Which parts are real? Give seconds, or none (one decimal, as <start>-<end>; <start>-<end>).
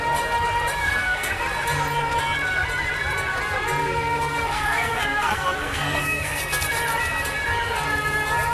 0.0-0.8; 1.4-3.8; 6.6-8.5